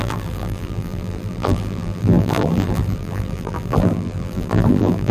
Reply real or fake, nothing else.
fake